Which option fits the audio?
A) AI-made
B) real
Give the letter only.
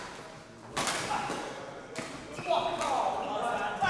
B